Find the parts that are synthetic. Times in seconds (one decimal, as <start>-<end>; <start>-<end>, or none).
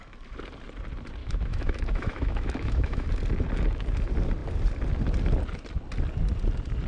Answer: 1.2-3.1